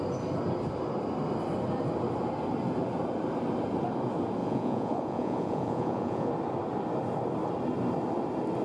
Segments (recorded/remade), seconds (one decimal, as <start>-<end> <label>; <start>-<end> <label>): 0.0-4.4 recorded; 4.4-6.3 remade; 6.3-8.6 recorded